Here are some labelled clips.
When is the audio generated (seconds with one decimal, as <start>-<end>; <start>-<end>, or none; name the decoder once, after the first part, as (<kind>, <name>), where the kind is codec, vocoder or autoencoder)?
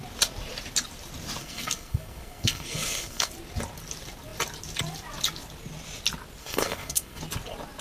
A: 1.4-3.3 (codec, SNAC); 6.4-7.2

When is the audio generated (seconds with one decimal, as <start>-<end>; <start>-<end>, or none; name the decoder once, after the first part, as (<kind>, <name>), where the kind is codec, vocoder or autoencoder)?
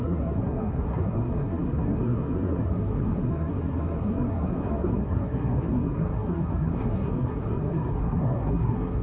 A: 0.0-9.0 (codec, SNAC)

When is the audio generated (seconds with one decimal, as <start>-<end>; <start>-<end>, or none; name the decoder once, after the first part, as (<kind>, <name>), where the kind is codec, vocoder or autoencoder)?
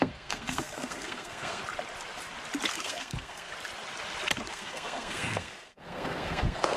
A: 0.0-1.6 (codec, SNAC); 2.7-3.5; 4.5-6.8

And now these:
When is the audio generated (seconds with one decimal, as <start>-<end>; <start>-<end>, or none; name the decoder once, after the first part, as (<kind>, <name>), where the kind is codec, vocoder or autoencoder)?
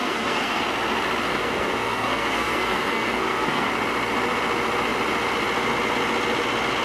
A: 0.0-0.6 (codec, SNAC); 1.3-3.7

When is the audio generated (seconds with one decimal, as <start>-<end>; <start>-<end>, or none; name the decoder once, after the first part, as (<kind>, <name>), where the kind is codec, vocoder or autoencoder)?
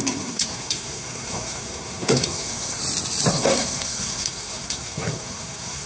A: 0.0-2.8 (codec, SNAC); 3.3-5.9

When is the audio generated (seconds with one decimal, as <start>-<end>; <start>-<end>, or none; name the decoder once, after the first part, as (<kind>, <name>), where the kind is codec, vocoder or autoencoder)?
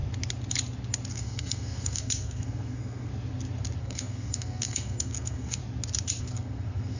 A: 1.1-3.1 (codec, SNAC); 3.8-5.6; 6.2-7.0